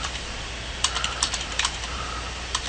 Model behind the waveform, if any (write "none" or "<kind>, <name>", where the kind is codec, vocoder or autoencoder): vocoder, BigVGAN v2